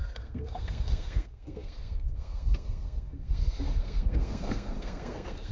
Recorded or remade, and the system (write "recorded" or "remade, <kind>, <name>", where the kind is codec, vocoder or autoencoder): remade, codec, SNAC